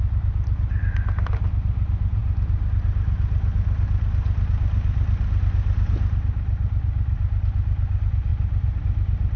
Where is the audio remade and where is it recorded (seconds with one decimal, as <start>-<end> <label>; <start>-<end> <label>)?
0.0-9.4 recorded